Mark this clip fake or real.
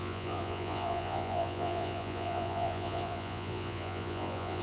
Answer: fake